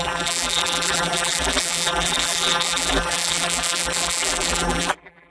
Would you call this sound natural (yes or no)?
no